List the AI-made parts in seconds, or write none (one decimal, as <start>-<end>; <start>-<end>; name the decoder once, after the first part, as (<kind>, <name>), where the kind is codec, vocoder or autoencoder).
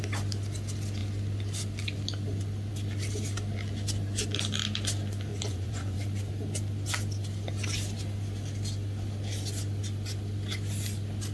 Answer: 5.3-6.2 (vocoder, Vocos)